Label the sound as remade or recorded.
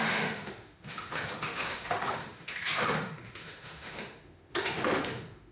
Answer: remade